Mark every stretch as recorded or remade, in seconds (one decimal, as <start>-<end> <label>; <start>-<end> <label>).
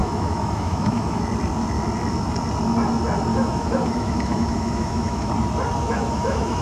0.0-1.2 remade; 1.2-3.3 recorded; 3.3-5.3 remade; 5.3-5.8 recorded; 5.8-6.6 remade